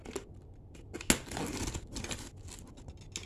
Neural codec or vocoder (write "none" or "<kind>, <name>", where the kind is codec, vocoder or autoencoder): none